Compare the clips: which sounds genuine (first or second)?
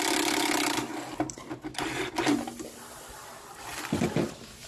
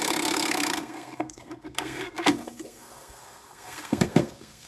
first